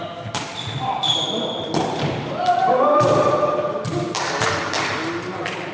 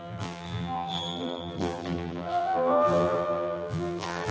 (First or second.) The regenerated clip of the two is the second